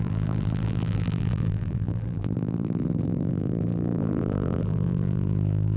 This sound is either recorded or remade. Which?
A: remade